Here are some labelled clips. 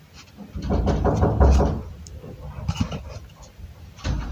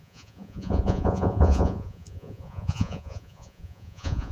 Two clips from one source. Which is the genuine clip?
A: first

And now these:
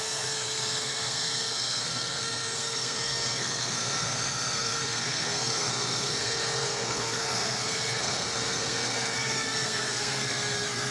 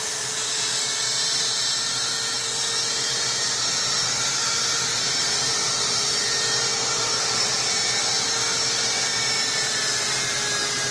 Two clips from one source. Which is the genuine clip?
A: second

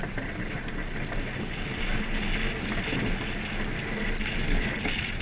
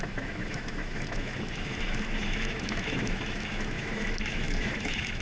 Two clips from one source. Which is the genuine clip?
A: first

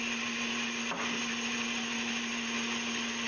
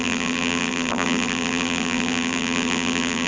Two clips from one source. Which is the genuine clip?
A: first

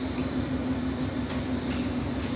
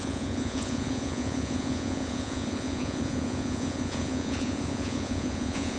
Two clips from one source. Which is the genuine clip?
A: first